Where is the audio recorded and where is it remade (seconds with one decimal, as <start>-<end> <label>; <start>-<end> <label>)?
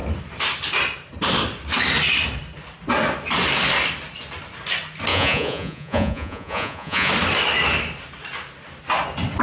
0.0-5.1 recorded; 5.1-7.1 remade; 7.1-9.4 recorded